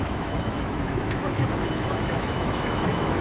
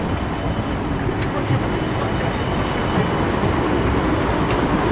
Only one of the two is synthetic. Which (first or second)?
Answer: first